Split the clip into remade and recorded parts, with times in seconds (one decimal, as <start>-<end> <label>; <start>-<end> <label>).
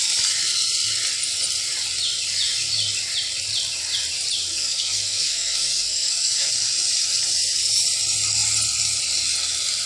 0.0-4.5 recorded; 4.5-6.5 remade; 6.5-9.9 recorded